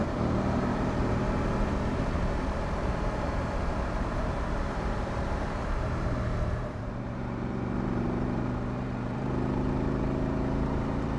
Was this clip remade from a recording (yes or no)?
yes